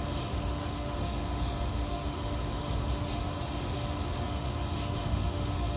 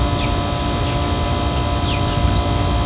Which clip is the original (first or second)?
second